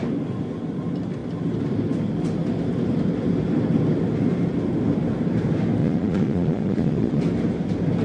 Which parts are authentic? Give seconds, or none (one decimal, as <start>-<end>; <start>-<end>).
0.0-5.8; 7.2-8.0